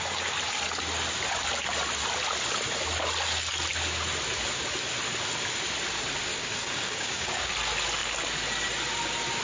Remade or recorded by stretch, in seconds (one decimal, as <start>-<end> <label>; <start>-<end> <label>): 0.0-6.3 recorded; 6.3-7.5 remade; 7.5-9.4 recorded